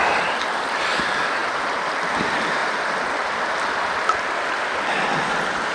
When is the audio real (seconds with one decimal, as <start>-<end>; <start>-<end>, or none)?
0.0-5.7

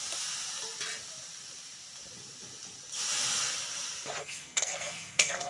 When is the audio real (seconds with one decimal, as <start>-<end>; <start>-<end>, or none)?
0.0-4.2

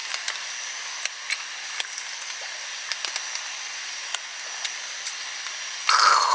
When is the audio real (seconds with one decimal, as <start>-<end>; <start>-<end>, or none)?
0.0-6.3

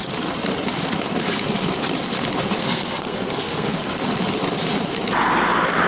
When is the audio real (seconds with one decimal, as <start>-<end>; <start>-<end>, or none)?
0.0-2.6; 4.0-5.9

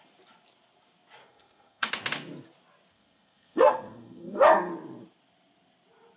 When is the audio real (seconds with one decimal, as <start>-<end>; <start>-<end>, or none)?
0.0-1.2; 1.9-2.9; 4.7-6.2

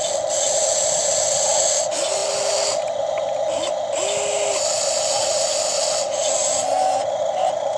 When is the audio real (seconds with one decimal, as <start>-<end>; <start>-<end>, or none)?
0.0-7.8

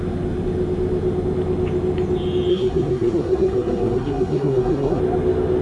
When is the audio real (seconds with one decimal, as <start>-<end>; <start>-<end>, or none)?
0.0-2.5; 5.0-5.6

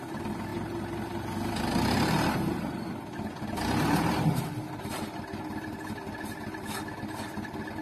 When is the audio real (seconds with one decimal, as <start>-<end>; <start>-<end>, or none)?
0.0-7.8